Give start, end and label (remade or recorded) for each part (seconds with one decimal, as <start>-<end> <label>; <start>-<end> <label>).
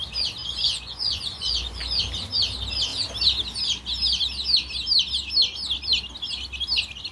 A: 0.0-0.4 recorded; 0.4-2.0 remade; 2.0-7.1 recorded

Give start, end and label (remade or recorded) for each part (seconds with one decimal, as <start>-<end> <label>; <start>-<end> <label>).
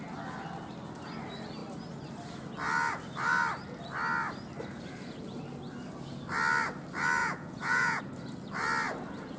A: 0.0-7.2 recorded; 7.2-8.0 remade; 8.0-9.4 recorded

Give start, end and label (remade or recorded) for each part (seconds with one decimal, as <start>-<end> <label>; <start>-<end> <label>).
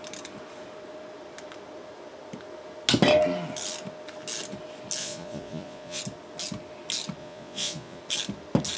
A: 0.0-5.0 recorded; 5.0-6.0 remade; 6.0-7.2 recorded; 7.2-8.0 remade; 8.0-8.8 recorded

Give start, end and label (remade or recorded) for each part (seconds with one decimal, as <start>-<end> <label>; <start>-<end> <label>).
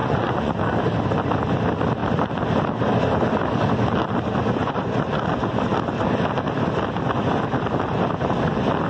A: 0.0-0.5 remade; 0.5-4.6 recorded; 4.6-5.2 remade; 5.2-8.9 recorded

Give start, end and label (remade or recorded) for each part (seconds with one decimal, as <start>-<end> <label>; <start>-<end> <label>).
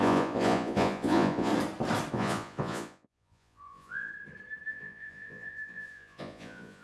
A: 0.0-1.5 remade; 1.5-2.1 recorded; 2.1-4.1 remade; 4.1-4.7 recorded; 4.7-6.8 remade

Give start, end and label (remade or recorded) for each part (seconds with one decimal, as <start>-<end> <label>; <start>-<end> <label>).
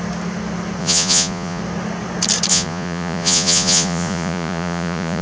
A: 0.0-0.8 recorded; 0.8-1.6 remade; 1.6-2.5 recorded; 2.5-5.2 remade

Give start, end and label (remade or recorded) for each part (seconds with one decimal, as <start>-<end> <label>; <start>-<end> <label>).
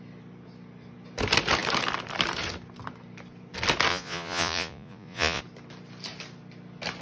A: 0.0-3.9 recorded; 3.9-5.4 remade; 5.4-7.0 recorded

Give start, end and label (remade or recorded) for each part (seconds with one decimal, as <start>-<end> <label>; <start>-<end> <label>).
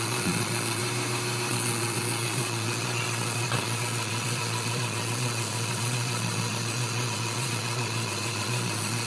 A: 0.0-0.8 remade; 0.8-1.5 recorded; 1.5-9.1 remade